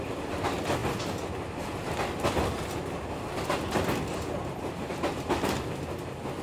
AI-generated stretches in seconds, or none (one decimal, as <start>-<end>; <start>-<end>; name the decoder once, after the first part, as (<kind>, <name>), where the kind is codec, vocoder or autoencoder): none